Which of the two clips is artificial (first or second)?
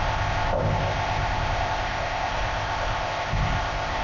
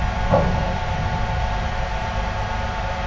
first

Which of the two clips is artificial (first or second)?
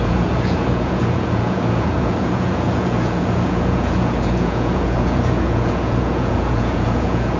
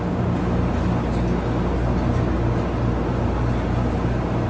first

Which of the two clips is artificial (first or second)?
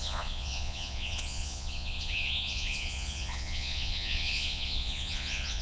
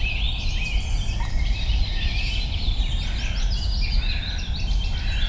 first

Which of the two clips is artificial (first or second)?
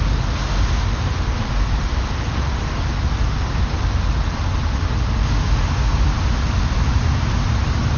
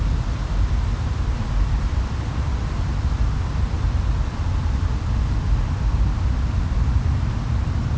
second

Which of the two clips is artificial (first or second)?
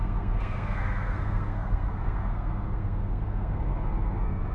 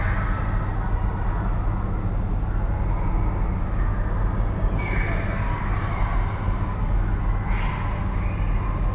first